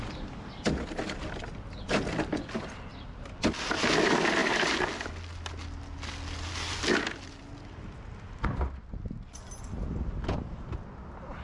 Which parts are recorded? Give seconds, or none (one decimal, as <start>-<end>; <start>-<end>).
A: 0.0-2.9; 3.4-11.4